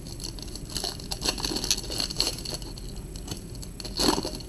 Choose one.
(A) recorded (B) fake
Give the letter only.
A